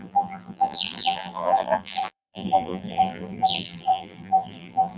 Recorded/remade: remade